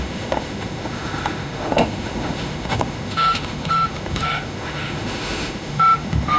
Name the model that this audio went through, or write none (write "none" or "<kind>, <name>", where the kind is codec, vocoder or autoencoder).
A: autoencoder, DAC-VAE